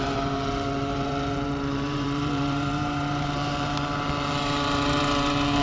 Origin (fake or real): fake